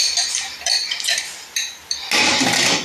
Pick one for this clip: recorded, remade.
recorded